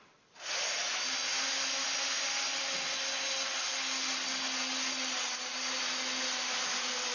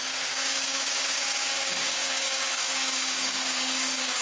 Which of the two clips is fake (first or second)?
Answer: second